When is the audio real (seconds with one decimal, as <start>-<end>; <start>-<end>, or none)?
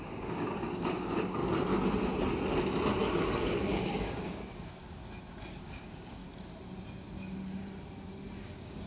1.4-3.4; 5.0-5.6; 6.2-8.4